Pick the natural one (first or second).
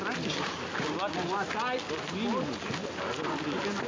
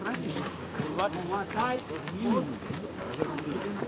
first